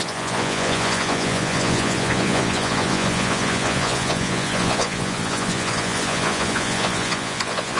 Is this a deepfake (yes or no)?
yes